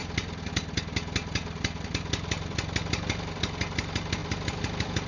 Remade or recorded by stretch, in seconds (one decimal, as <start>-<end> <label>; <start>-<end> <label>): 0.0-5.1 recorded